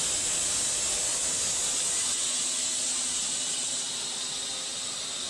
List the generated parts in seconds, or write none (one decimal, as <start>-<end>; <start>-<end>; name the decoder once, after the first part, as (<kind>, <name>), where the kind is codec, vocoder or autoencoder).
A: none